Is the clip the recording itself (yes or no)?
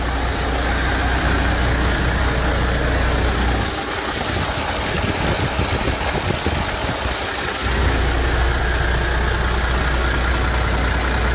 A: yes